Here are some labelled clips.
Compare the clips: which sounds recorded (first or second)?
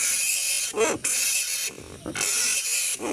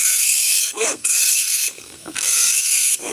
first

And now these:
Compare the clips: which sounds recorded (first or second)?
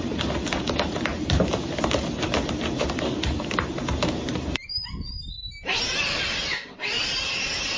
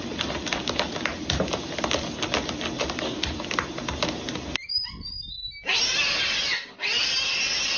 second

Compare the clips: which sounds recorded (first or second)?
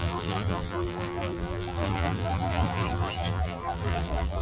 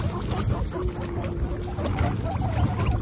second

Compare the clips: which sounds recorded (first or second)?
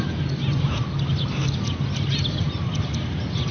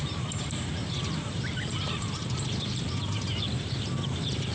first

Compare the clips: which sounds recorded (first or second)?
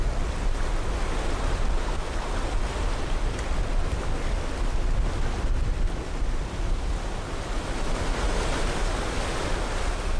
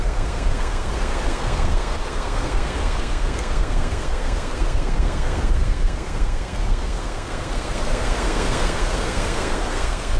first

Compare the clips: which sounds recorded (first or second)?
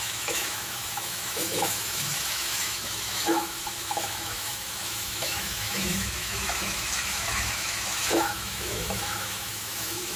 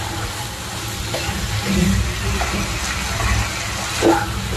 second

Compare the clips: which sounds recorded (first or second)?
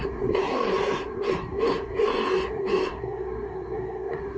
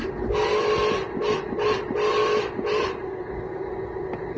second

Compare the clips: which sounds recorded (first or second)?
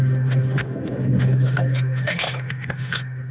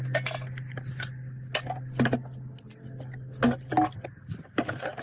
second